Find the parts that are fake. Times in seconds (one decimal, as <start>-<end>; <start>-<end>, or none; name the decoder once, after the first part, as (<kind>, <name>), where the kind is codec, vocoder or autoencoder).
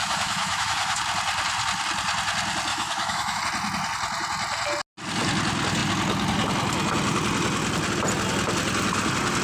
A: 0.0-1.0 (autoencoder, DAC-VAE); 2.7-3.4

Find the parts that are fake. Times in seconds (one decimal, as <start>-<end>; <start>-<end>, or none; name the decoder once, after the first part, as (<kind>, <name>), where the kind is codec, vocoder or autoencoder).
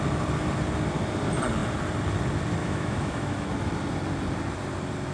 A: 2.6-3.5 (autoencoder, DAC-VAE)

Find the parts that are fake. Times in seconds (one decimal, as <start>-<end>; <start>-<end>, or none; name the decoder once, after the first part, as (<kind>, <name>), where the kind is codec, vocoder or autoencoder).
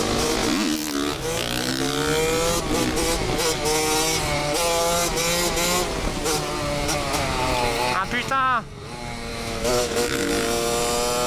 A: 9.3-10.3 (autoencoder, DAC-VAE)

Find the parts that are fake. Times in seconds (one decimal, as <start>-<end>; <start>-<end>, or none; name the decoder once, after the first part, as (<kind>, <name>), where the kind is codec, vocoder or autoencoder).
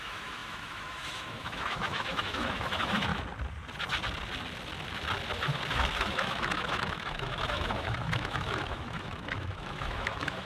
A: 0.0-3.1 (autoencoder, DAC-VAE); 5.7-10.5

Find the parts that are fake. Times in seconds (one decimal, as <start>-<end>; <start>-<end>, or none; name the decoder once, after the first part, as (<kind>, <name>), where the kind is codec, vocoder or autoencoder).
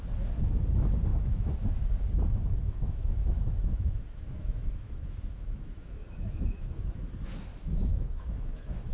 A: 1.1-1.7 (autoencoder, DAC-VAE); 2.6-7.0; 7.5-8.9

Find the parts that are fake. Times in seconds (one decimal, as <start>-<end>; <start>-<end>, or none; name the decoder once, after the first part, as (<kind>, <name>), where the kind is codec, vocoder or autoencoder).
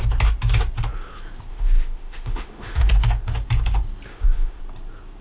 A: 1.5-2.9 (autoencoder, DAC-VAE); 4.1-4.6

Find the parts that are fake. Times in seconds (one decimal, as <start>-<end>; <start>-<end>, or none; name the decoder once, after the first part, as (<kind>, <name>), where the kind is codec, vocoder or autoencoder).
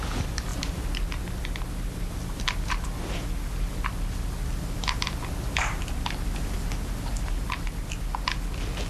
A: none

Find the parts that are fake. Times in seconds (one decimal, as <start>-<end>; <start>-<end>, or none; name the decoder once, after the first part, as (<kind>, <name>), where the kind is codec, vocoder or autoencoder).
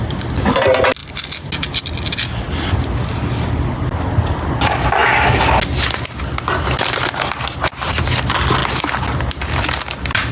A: none